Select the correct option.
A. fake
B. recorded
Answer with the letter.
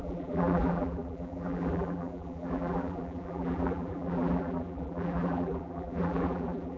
A